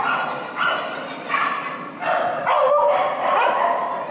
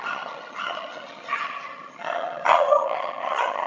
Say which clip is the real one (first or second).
first